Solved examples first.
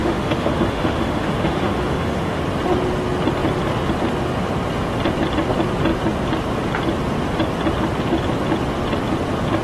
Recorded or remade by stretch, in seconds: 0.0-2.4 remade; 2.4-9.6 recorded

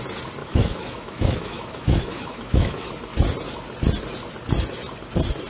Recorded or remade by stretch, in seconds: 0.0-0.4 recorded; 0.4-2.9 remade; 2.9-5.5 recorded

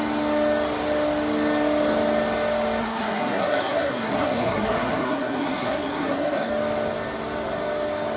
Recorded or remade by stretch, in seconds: 0.0-2.8 recorded; 2.8-6.5 remade; 6.5-8.2 recorded

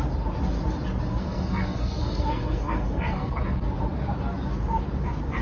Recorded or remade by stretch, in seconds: 0.0-1.1 recorded; 1.1-3.4 remade; 3.4-5.4 recorded

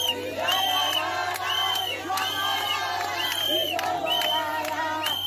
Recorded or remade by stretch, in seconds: 0.0-5.3 recorded